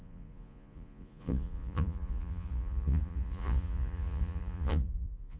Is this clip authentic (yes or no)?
no